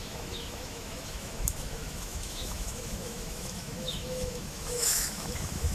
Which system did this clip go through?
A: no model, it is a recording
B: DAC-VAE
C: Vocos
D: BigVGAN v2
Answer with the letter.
B